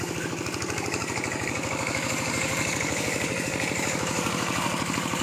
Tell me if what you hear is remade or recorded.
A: remade